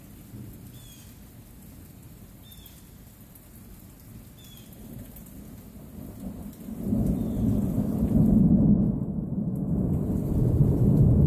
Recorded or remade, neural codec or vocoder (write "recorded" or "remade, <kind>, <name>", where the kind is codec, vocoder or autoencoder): recorded